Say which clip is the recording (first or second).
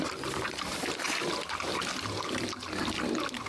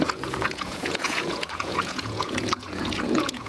first